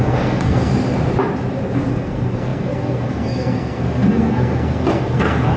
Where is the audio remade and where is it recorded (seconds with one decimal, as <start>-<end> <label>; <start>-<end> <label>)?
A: 0.0-0.7 remade; 0.7-1.9 recorded; 1.9-5.6 remade